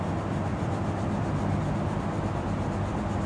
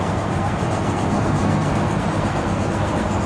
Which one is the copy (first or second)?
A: second